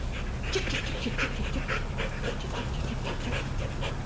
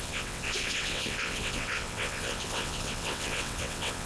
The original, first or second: first